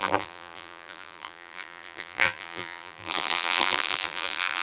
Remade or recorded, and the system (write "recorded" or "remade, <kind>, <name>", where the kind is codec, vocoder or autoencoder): remade, vocoder, BigVGAN v2